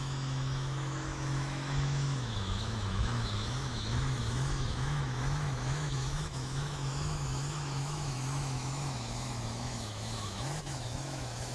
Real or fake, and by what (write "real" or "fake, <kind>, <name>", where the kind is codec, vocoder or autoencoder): fake, autoencoder, DAC-VAE